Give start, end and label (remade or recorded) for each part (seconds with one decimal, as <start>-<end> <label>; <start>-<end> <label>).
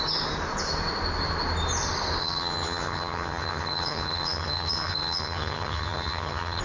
0.0-2.2 recorded; 2.2-6.6 remade